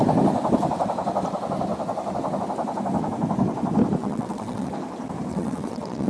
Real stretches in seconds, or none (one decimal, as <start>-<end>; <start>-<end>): 0.0-4.0; 4.7-5.3